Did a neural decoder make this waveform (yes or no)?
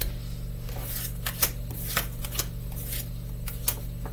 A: no